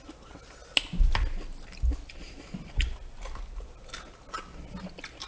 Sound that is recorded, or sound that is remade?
recorded